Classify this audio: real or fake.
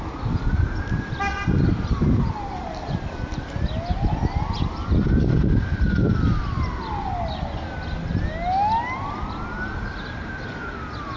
real